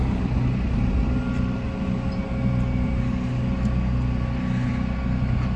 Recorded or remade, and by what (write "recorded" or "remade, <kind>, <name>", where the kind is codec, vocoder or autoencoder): recorded